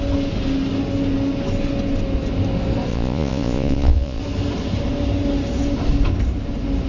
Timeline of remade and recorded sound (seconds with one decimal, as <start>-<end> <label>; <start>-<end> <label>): 0.0-2.9 recorded; 2.9-4.2 remade; 4.2-6.9 recorded